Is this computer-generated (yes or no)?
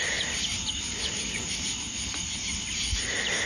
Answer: no